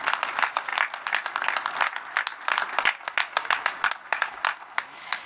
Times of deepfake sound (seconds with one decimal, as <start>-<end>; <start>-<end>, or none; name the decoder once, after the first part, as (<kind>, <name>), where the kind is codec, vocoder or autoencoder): none